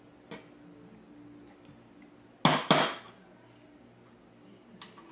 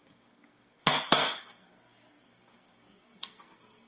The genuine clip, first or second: first